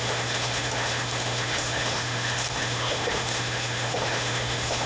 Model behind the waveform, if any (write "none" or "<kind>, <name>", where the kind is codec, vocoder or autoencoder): autoencoder, DAC-VAE